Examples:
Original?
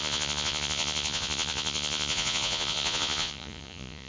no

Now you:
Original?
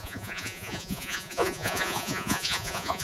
no